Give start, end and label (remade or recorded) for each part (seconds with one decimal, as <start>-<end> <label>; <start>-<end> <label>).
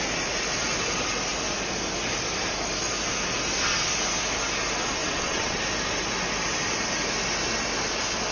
0.0-5.0 recorded; 5.0-5.6 remade; 5.6-8.3 recorded